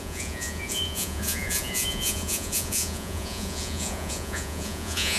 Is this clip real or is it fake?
fake